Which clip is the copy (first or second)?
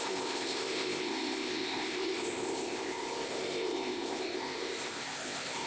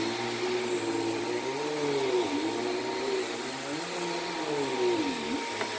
first